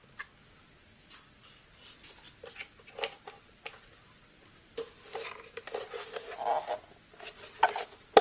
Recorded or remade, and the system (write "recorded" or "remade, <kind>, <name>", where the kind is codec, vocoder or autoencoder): recorded